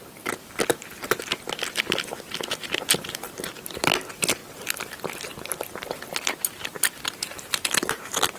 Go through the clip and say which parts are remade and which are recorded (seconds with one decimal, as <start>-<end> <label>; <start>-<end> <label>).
0.0-8.4 recorded